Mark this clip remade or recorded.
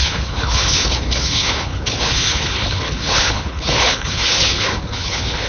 remade